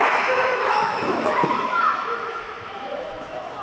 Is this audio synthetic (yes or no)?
yes